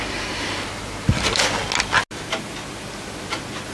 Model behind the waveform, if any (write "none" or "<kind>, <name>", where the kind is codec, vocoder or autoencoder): none